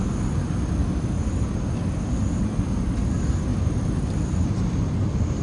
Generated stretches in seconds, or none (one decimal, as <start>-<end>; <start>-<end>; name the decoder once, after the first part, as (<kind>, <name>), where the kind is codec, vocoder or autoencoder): 3.5-4.5 (vocoder, BigVGAN v2)